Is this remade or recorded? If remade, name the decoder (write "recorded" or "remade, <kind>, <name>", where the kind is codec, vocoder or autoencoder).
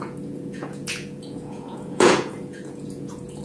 remade, vocoder, Vocos